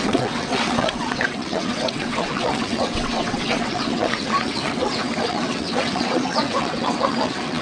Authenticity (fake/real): fake